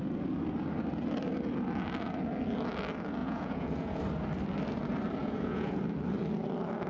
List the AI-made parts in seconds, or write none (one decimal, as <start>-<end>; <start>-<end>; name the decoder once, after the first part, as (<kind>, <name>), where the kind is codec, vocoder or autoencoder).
3.2-4.0 (vocoder, Vocos); 5.2-5.8